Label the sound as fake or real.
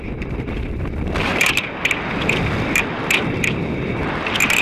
fake